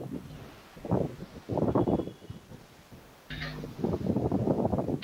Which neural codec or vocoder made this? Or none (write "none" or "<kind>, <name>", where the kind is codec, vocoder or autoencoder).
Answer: none